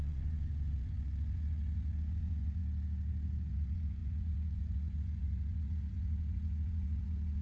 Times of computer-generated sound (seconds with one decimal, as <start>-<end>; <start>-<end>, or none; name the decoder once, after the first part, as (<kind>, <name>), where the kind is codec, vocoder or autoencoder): 0.0-2.6 (vocoder, Vocos); 3.5-7.4